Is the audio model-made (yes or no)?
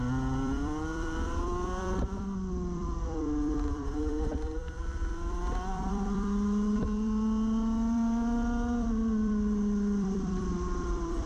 yes